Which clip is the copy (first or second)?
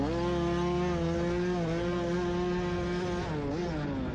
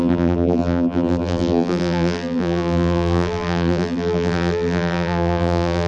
second